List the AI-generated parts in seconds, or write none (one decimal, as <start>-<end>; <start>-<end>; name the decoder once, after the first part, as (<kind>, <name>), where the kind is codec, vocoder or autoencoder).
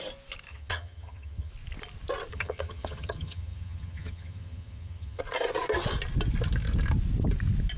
0.5-1.5 (vocoder, HiFi-GAN); 2.3-5.2